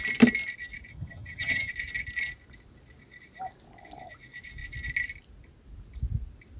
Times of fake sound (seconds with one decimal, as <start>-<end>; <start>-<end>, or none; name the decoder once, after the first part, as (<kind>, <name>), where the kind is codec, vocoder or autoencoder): 0.9-1.7 (vocoder, HiFi-GAN)